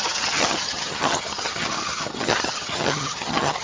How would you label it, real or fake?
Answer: fake